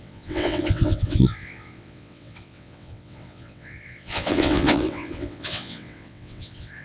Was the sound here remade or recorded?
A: remade